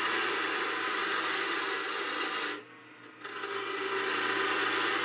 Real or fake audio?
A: real